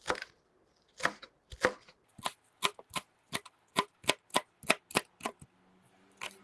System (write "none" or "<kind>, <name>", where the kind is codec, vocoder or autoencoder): none